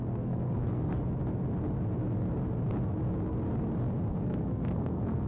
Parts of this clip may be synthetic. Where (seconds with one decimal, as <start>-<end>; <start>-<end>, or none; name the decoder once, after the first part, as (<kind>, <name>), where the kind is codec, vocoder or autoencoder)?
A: 0.0-0.9 (codec, SNAC); 4.1-5.3